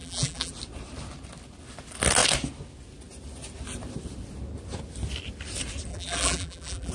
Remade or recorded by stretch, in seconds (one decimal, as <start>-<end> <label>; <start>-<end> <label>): 0.0-0.5 remade; 0.5-5.9 recorded; 5.9-6.9 remade